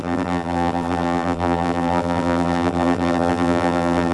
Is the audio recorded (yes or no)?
no